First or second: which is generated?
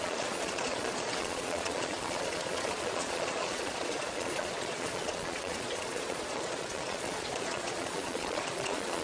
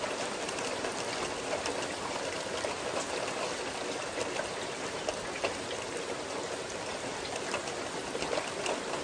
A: first